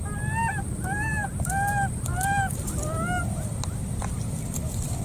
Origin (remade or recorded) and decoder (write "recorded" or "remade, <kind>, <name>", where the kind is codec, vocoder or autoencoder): recorded